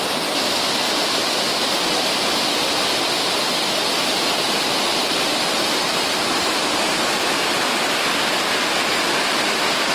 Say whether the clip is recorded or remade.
recorded